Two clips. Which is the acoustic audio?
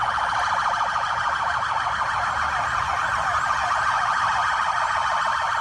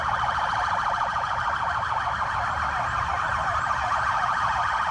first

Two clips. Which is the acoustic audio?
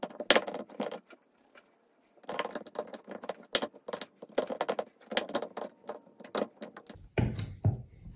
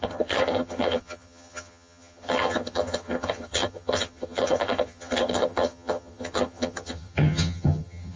first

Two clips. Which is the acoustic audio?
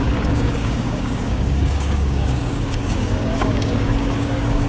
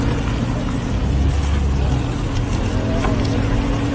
second